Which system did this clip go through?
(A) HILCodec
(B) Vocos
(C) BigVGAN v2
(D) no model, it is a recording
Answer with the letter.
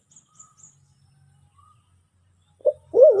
D